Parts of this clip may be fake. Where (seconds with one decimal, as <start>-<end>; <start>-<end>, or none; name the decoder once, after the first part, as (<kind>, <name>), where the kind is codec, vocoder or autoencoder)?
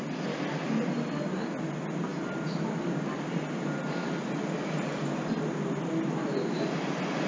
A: none